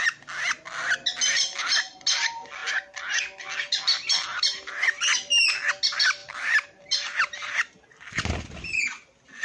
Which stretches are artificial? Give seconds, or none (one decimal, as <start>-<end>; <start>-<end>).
6.2-7.8